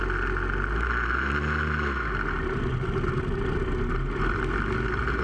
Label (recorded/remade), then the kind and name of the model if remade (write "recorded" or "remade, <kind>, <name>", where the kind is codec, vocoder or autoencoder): recorded